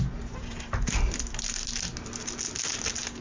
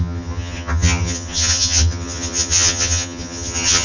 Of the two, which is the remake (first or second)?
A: second